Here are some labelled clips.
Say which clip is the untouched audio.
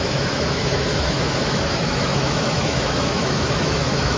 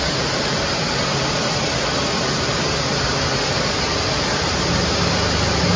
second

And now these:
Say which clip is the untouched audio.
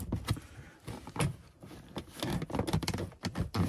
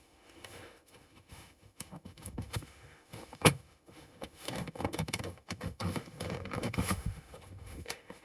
first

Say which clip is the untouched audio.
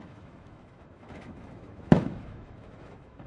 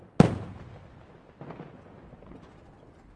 second